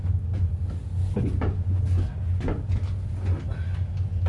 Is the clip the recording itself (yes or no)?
yes